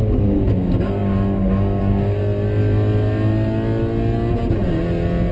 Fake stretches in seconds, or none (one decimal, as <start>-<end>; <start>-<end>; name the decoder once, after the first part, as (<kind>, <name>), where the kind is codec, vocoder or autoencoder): 0.0-2.2 (codec, DAC)